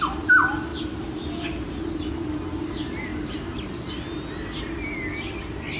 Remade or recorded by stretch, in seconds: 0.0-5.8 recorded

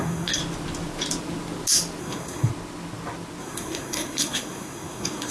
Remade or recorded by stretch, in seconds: 0.0-0.4 remade; 0.4-2.0 recorded; 2.0-2.5 remade; 2.5-3.4 recorded; 3.4-5.3 remade

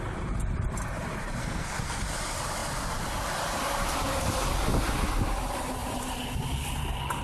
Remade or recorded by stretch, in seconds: 0.0-1.4 recorded; 1.4-2.0 remade; 2.0-7.2 recorded

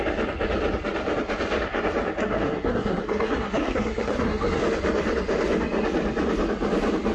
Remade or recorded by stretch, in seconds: 0.0-2.2 recorded; 2.2-4.6 remade; 4.6-7.1 recorded